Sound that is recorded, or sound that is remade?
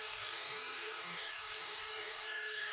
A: remade